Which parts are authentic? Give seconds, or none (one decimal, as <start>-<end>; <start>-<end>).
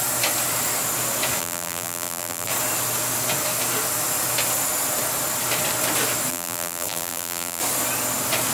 0.0-1.4; 2.5-6.3; 7.6-8.5